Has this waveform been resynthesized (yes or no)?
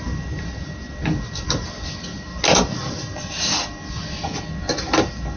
no